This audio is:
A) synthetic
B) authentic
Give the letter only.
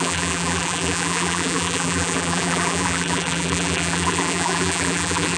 A